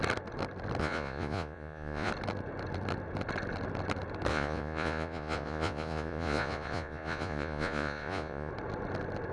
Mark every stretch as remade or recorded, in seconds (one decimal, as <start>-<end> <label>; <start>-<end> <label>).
0.0-0.8 recorded; 0.8-2.1 remade; 2.1-4.3 recorded; 4.3-8.5 remade; 8.5-9.3 recorded